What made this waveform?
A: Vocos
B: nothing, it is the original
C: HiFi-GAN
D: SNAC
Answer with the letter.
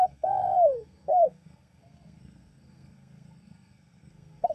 D